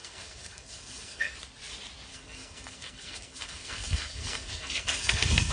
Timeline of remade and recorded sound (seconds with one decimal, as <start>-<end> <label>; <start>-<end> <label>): 0.0-1.4 remade; 1.4-2.1 recorded; 2.1-5.5 remade